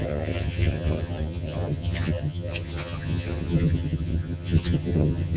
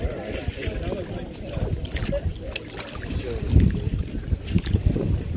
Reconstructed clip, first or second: first